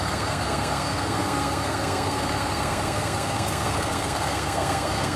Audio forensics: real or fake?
fake